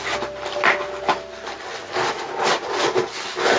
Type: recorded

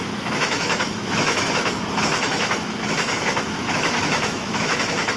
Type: remade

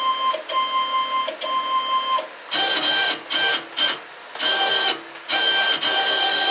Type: recorded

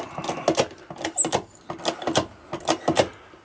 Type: recorded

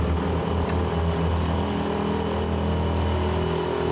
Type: recorded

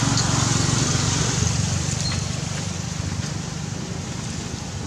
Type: recorded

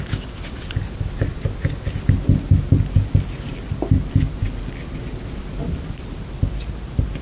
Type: recorded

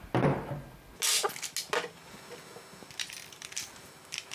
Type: recorded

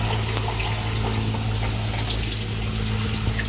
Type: recorded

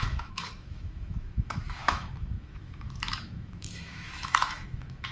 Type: remade